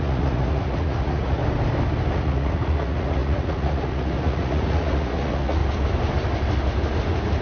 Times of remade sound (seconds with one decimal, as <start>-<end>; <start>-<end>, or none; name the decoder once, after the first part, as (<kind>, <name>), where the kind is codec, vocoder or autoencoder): 0.0-1.4 (vocoder, Vocos); 2.1-5.6